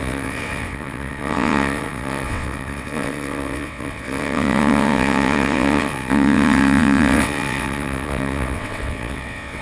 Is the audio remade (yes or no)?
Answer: yes